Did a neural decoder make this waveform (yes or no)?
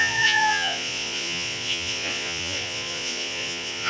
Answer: yes